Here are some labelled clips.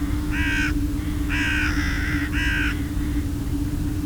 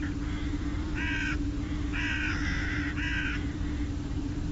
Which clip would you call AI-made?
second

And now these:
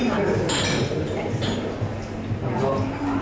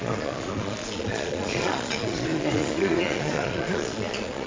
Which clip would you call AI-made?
second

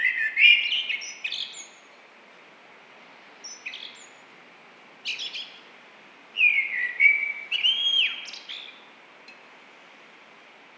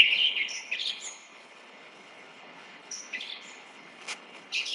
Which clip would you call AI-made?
second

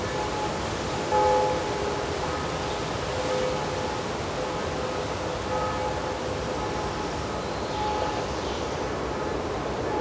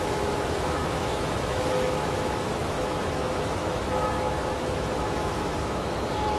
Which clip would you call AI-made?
second